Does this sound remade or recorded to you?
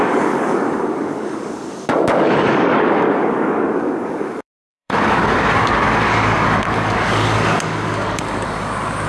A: remade